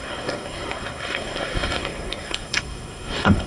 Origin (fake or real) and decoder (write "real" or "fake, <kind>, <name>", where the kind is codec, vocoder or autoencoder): fake, codec, SNAC